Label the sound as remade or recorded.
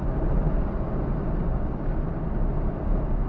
recorded